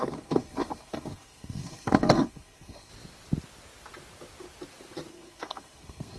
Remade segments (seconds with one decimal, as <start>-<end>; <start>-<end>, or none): 0.0-2.9; 5.1-6.2